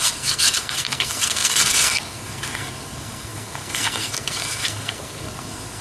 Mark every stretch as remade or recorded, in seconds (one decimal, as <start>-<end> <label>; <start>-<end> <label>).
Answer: 0.0-5.8 remade